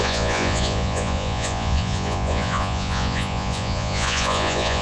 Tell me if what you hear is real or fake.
fake